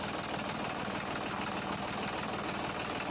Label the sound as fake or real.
real